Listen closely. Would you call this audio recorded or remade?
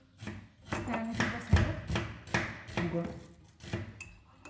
recorded